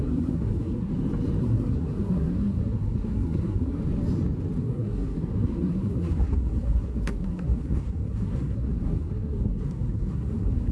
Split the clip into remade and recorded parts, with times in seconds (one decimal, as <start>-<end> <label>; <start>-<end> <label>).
0.0-0.9 remade; 0.9-1.4 recorded; 1.4-3.8 remade; 3.8-4.6 recorded; 4.6-10.7 remade